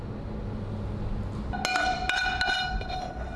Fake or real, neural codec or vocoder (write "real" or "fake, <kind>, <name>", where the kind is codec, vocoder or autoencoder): real